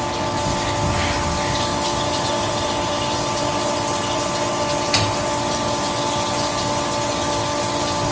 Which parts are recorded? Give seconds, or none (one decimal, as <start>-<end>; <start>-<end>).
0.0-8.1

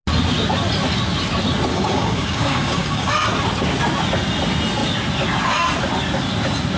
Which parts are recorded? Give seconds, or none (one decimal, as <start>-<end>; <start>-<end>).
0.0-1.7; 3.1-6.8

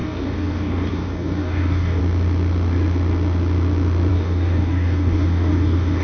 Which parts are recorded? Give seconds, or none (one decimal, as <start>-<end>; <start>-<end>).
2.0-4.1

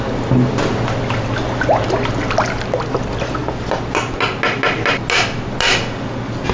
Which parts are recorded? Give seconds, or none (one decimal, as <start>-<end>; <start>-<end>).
0.0-6.5

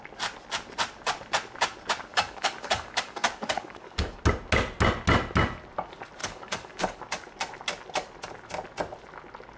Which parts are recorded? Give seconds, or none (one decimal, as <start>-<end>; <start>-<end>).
0.0-2.1; 4.2-6.2; 7.0-9.6

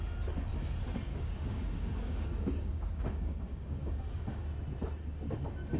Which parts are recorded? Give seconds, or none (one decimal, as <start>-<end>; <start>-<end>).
0.0-1.1; 4.5-5.8